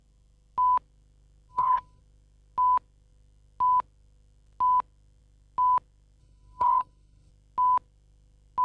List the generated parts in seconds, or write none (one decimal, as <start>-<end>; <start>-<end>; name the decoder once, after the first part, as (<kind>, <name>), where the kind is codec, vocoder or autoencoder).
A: 1.5-2.0 (codec, HILCodec); 6.2-7.3